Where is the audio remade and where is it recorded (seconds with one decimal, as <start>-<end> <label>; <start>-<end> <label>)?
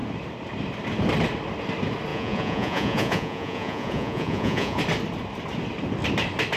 0.0-2.1 recorded; 2.1-4.8 remade; 4.8-6.6 recorded